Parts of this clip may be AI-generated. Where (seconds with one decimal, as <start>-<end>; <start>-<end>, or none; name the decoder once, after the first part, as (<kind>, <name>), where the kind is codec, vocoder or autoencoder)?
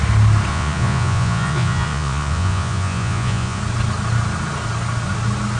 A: 0.5-3.6 (vocoder, Vocos)